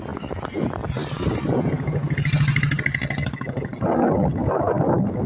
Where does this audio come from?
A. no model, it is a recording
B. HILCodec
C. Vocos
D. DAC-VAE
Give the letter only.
A